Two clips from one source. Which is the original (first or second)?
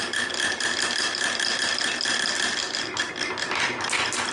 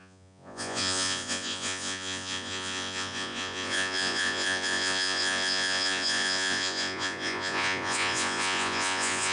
first